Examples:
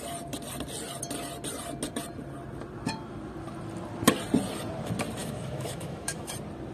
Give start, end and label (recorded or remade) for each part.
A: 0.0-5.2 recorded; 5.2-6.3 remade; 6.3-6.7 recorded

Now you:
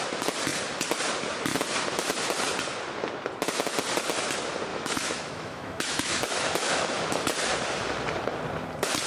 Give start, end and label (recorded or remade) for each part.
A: 0.0-4.7 recorded; 4.7-6.9 remade; 6.9-9.1 recorded

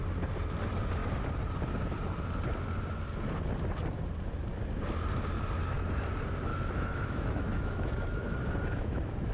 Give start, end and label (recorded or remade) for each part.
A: 0.0-6.5 recorded; 6.5-9.3 remade

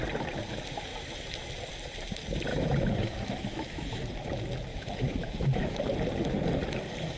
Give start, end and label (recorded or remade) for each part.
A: 0.0-2.5 recorded; 2.5-4.1 remade; 4.1-4.7 recorded; 4.7-5.8 remade; 5.8-7.2 recorded

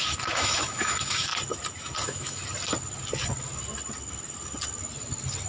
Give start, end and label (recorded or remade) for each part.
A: 0.0-1.3 remade; 1.3-2.0 recorded; 2.0-2.4 remade; 2.4-5.5 recorded